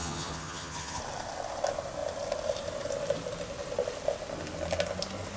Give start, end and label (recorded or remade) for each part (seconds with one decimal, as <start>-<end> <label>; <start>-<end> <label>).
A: 0.0-1.0 remade; 1.0-5.4 recorded